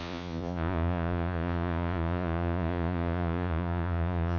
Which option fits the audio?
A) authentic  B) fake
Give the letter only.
B